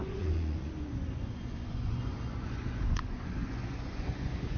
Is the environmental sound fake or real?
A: fake